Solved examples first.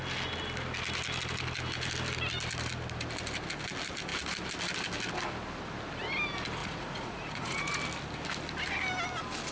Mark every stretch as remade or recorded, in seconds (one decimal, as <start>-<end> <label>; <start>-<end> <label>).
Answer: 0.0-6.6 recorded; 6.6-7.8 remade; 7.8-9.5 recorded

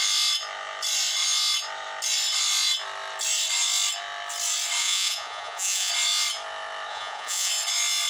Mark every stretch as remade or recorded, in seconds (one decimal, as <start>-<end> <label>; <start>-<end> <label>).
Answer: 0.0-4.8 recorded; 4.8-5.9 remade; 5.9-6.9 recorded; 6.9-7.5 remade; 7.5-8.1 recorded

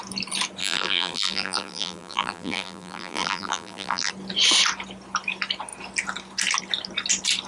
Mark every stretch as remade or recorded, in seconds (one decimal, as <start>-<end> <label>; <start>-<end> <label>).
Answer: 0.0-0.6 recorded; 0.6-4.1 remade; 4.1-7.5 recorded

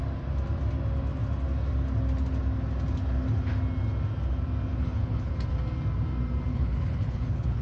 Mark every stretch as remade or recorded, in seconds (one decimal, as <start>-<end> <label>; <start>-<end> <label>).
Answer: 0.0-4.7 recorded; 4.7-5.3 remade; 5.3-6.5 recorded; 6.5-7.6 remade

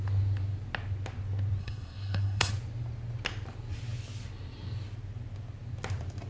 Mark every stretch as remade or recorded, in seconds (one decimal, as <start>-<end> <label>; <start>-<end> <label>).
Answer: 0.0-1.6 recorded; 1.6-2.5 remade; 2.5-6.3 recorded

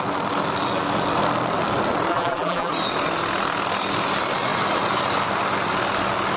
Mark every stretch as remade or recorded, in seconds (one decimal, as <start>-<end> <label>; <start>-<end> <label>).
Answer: 0.0-2.1 recorded; 2.1-2.7 remade; 2.7-6.4 recorded